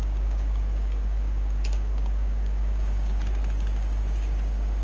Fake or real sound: fake